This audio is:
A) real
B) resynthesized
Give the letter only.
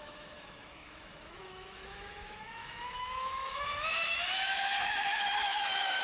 B